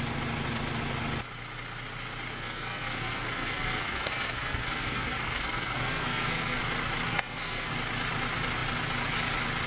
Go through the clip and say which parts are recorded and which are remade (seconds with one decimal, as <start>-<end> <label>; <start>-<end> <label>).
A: 0.0-2.3 recorded; 2.3-6.6 remade; 6.6-7.1 recorded; 7.1-7.7 remade; 7.7-9.7 recorded